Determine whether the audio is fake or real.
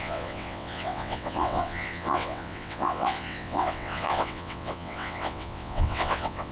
fake